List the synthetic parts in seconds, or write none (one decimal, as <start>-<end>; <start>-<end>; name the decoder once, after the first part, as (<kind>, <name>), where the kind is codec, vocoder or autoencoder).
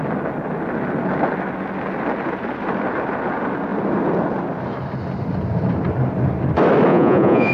6.9-7.5 (vocoder, Vocos)